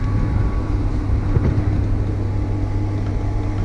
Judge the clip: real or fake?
real